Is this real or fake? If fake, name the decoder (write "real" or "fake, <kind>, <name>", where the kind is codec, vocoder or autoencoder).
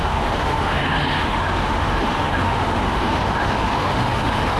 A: fake, autoencoder, DAC-VAE